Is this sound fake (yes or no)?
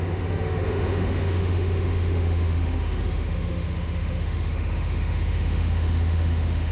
yes